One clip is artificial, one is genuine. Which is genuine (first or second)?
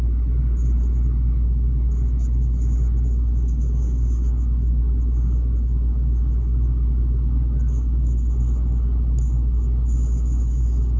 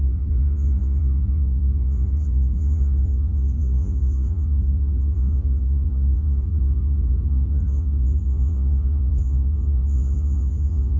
first